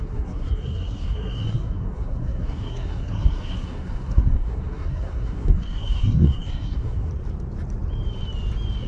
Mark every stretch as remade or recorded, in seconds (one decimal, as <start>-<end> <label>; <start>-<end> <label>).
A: 0.0-7.1 remade; 7.1-8.9 recorded